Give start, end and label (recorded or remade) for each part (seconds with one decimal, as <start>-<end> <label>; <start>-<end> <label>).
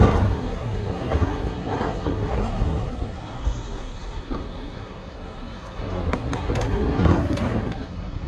0.0-8.3 remade